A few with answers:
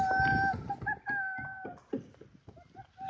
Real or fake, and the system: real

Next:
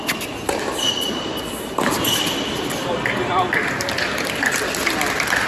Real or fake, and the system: real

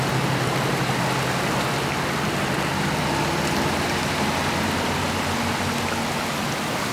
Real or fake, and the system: real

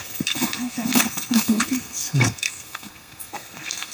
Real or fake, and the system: fake, codec, SNAC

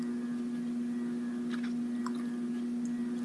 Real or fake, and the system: real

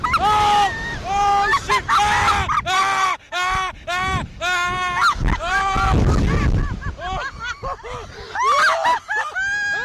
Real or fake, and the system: real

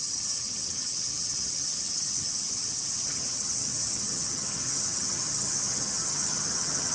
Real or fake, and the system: fake, vocoder, HiFi-GAN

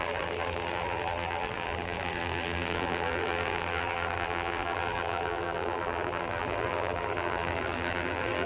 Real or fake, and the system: fake, vocoder, BigVGAN v2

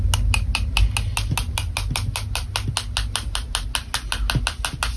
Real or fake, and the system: real